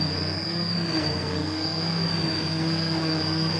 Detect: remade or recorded remade